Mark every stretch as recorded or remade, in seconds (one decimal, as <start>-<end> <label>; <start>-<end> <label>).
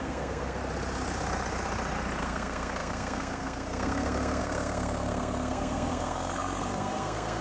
0.0-0.6 remade; 0.6-2.2 recorded; 2.2-7.4 remade